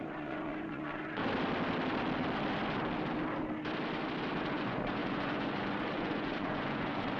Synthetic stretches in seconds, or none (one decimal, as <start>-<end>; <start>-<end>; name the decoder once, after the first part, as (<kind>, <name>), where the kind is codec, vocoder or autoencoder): 0.0-1.2 (vocoder, Vocos); 4.5-7.2